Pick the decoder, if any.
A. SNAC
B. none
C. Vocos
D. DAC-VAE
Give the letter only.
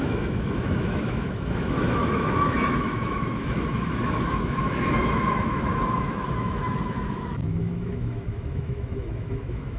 D